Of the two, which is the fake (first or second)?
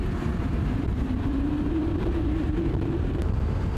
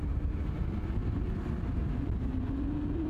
first